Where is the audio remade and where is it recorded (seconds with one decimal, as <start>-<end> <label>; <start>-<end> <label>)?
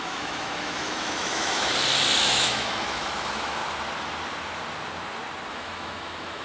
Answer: 0.0-1.7 remade; 1.7-2.2 recorded; 2.2-3.6 remade; 3.6-5.5 recorded; 5.5-6.4 remade